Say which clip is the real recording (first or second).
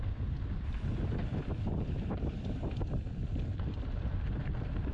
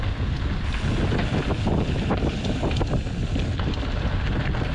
second